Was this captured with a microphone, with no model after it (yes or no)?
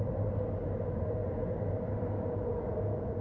yes